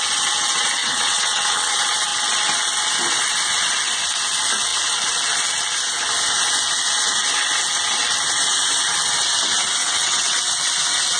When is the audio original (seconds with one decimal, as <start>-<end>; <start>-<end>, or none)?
0.0-0.8; 1.7-9.8; 10.4-11.2